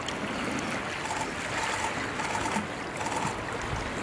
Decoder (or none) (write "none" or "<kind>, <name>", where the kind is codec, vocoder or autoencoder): none